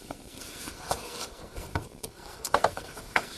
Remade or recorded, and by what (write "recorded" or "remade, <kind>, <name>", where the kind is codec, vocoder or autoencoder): remade, codec, SNAC